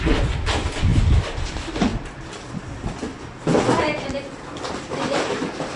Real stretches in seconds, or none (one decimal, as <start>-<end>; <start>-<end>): 0.0-0.9; 1.5-5.8